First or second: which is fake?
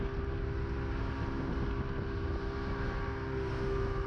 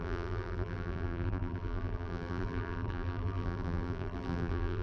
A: second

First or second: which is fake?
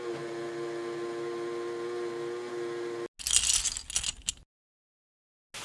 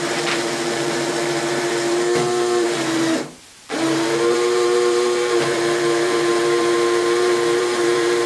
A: second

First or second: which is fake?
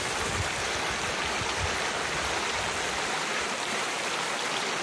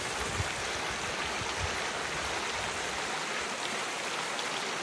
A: first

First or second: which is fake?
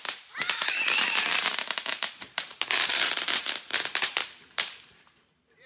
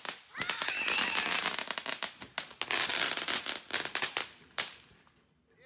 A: first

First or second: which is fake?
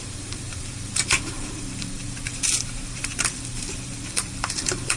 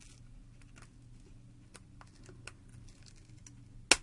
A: first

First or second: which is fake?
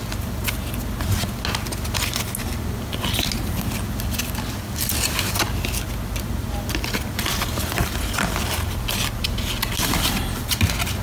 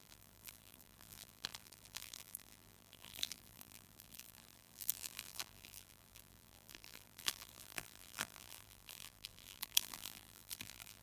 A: second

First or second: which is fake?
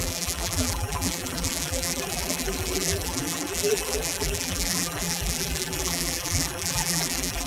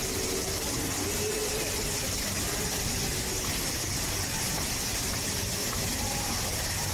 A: first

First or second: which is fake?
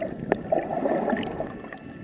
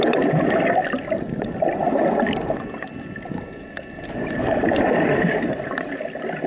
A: first